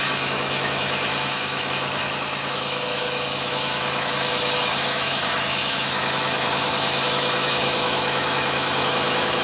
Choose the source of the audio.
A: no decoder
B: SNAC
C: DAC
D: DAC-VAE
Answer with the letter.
D